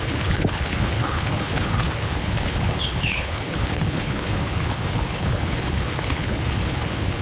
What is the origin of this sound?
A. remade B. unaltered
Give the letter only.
A